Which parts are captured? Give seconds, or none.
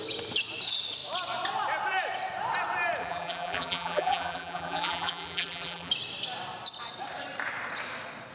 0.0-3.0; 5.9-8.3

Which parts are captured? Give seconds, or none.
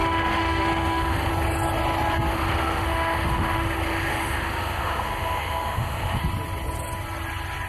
1.3-2.3; 6.2-7.7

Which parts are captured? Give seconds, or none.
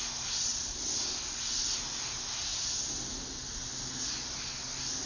0.0-5.1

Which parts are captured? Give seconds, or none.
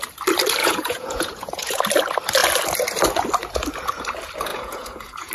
0.0-0.6; 1.8-4.5